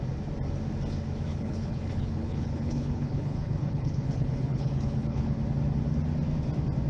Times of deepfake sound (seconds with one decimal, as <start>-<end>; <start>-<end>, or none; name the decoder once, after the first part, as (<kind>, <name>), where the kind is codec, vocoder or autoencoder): 1.3-5.4 (codec, HILCodec)